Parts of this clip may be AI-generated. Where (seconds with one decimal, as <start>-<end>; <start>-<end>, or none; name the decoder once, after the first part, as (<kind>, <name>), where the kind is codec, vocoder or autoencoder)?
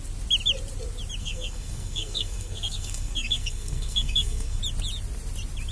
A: 1.2-4.6 (codec, SNAC)